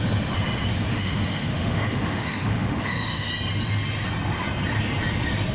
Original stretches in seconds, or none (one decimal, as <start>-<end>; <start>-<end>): 0.0-0.9; 3.3-5.5